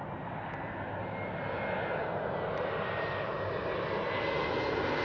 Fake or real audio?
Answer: real